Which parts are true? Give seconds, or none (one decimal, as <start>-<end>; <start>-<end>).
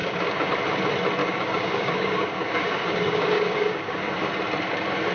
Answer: 0.5-1.2; 4.3-5.1